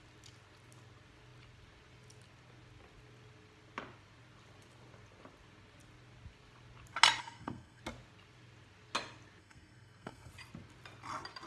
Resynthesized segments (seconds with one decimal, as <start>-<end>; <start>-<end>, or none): 7.2-7.8; 9.4-10.3